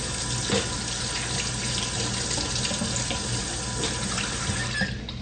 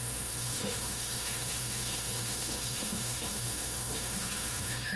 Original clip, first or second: first